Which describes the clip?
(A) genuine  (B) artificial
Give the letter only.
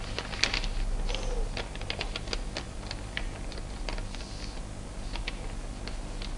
A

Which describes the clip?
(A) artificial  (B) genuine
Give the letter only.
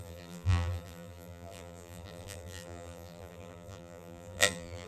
A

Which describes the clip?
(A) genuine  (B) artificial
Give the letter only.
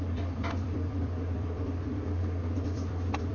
B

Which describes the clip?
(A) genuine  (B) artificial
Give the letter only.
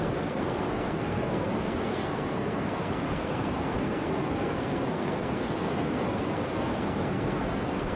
B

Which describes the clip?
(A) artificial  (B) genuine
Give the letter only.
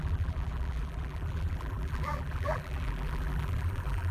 A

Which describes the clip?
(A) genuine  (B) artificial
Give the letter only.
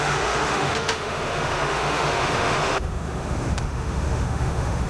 B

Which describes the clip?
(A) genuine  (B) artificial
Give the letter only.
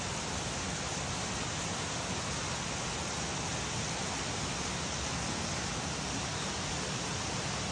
A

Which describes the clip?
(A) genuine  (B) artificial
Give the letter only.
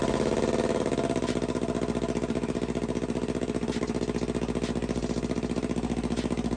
A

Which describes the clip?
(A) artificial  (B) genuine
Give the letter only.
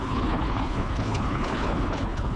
A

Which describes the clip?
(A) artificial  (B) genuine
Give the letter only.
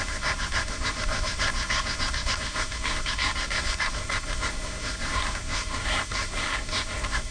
A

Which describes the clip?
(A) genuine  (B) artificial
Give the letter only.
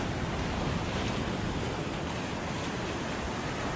A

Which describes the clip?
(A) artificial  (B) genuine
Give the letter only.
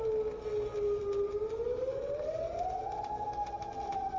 B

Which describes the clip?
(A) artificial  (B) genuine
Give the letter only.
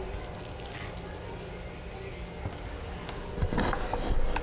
B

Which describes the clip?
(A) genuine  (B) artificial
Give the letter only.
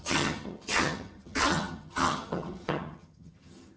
B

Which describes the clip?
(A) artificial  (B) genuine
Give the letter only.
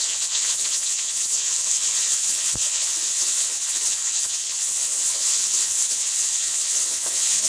A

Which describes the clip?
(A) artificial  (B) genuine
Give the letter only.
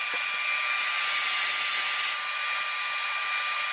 B